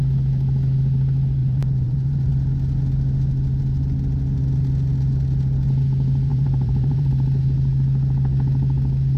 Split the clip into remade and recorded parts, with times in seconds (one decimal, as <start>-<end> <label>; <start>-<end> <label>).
0.0-1.4 recorded; 1.4-2.3 remade; 2.3-6.3 recorded; 6.3-7.1 remade; 7.1-9.2 recorded